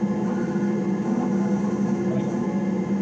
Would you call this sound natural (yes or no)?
yes